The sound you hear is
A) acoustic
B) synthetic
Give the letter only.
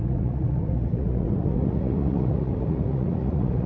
B